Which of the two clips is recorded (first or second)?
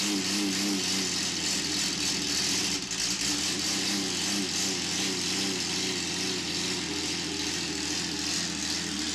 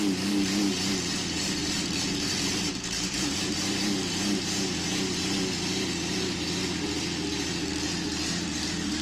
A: first